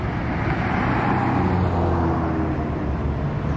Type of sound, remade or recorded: recorded